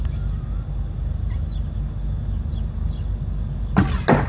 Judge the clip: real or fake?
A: real